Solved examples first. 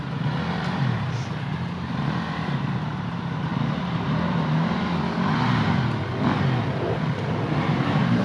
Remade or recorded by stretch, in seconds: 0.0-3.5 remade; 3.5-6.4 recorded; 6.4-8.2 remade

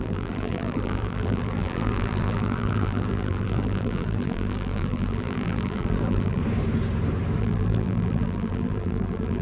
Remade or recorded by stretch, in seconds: 0.0-6.4 remade; 6.4-7.4 recorded; 7.4-9.4 remade

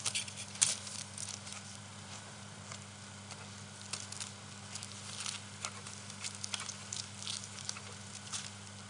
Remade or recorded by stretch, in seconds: 0.0-1.5 recorded; 1.5-2.6 remade; 2.6-7.4 recorded; 7.4-8.1 remade; 8.1-8.9 recorded

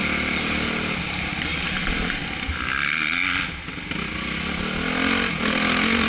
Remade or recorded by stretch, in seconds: 0.0-2.2 remade; 2.2-6.1 recorded

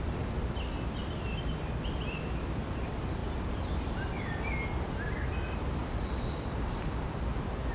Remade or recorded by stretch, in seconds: 0.0-5.8 recorded; 5.8-7.7 remade

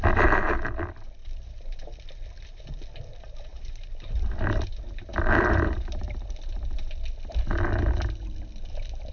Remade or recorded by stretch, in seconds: 0.0-1.2 recorded; 1.2-1.8 remade; 1.8-3.5 recorded; 3.5-4.3 remade; 4.3-5.1 recorded; 5.1-6.6 remade; 6.6-9.1 recorded

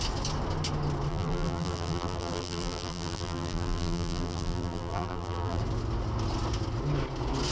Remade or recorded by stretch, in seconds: 0.0-1.1 recorded; 1.1-5.6 remade; 5.6-7.5 recorded

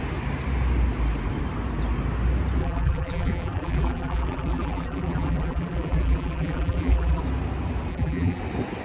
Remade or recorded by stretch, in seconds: 0.0-2.6 recorded; 2.6-7.2 remade; 7.2-7.9 recorded; 7.9-8.4 remade; 8.4-8.8 recorded